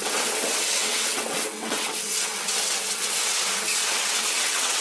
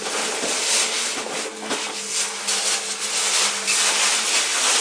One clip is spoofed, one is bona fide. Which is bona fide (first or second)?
second